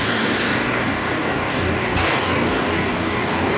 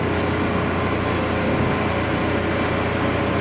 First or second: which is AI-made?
first